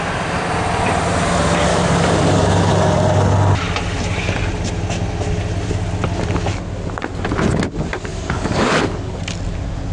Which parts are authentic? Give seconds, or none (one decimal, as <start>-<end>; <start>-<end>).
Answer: 0.0-1.7; 2.7-8.1; 9.2-9.9